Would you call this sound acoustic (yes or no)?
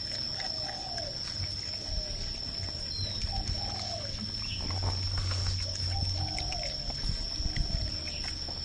yes